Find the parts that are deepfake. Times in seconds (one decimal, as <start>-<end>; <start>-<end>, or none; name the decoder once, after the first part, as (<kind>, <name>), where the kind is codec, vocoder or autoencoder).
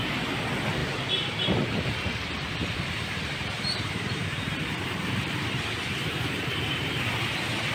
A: 2.6-6.4 (vocoder, BigVGAN v2)